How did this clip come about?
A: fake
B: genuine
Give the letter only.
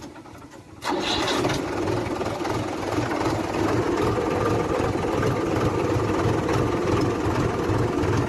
B